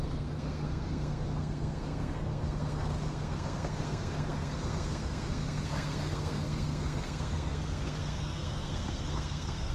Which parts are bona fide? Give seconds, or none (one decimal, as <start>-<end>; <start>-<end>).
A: none